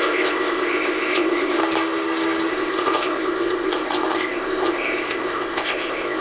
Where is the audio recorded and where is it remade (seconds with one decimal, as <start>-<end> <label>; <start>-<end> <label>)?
0.0-1.6 remade; 1.6-2.5 recorded; 2.5-6.2 remade